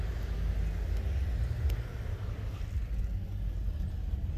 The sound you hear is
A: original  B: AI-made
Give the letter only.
A